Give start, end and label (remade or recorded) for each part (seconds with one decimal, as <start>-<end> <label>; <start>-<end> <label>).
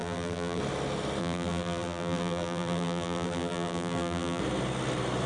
0.0-0.6 remade; 0.6-1.2 recorded; 1.2-4.4 remade; 4.4-5.3 recorded